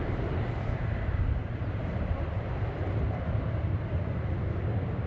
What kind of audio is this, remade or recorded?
remade